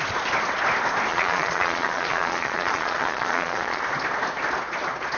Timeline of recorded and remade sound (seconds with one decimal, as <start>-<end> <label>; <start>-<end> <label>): 0.0-1.1 recorded; 1.1-3.8 remade; 3.8-5.2 recorded